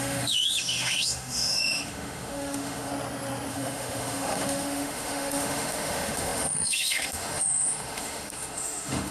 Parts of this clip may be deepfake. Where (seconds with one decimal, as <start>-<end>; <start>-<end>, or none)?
0.0-2.9; 3.5-9.1